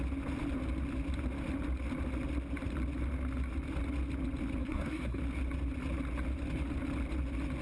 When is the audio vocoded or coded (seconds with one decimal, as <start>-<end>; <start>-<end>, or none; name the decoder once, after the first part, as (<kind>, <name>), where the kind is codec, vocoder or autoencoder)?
4.6-5.2 (codec, SNAC)

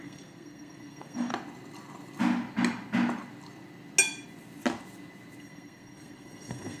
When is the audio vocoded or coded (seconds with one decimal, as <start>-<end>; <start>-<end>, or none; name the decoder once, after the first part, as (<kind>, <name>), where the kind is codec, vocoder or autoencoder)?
0.0-1.3 (codec, SNAC); 5.4-6.8

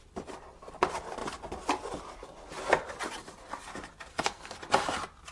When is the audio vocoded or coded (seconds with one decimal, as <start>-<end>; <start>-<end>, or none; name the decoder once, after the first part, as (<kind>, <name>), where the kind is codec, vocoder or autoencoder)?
4.1-4.6 (codec, SNAC)

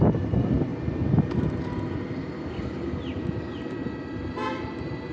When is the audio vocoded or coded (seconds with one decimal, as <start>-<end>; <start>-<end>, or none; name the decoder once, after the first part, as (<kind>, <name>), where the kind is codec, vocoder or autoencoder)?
none

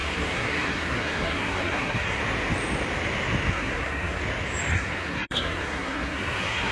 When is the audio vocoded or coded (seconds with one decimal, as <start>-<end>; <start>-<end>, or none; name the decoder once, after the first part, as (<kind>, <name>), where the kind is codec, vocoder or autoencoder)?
0.0-2.2 (codec, SNAC); 3.5-4.2; 4.7-6.7